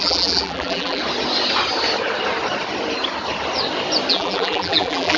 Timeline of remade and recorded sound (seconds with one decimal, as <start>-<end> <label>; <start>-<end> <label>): 0.0-1.0 remade; 1.0-4.1 recorded; 4.1-5.2 remade